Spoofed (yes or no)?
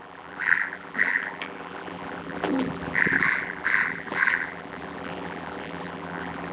yes